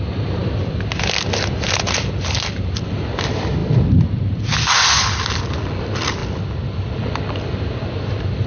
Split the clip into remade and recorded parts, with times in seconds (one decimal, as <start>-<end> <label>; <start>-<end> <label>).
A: 0.0-8.5 recorded